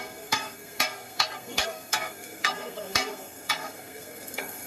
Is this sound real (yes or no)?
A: no